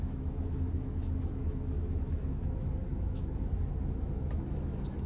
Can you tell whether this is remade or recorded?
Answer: remade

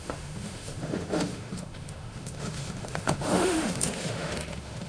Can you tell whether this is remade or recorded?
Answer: remade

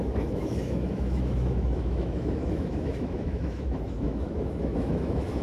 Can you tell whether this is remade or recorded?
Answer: remade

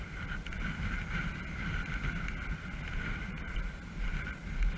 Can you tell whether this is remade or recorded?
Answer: recorded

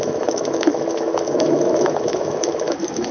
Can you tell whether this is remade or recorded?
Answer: remade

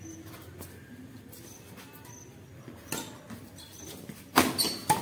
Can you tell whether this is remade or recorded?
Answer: recorded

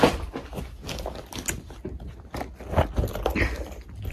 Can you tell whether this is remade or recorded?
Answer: recorded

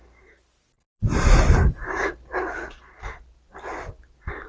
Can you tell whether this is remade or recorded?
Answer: recorded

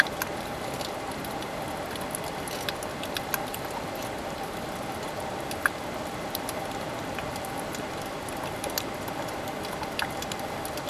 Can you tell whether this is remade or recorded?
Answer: recorded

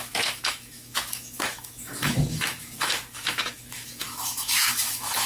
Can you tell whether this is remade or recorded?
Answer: remade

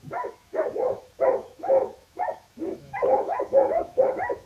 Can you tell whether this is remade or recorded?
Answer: remade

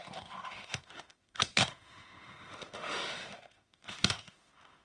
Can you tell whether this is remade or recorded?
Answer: remade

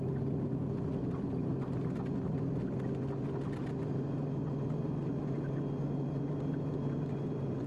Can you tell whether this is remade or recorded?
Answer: recorded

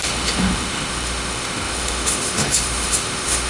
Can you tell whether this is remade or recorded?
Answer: remade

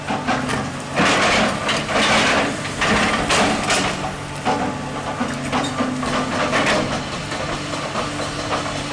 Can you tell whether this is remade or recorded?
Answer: recorded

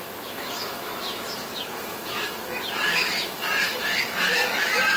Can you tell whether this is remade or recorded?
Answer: remade